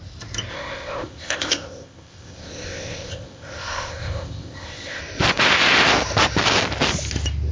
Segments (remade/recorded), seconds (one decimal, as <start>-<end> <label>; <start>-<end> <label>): 0.0-0.5 recorded; 0.5-5.0 remade; 5.0-7.5 recorded